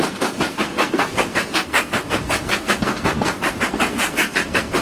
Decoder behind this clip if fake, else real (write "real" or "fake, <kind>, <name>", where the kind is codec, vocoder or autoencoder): fake, codec, SNAC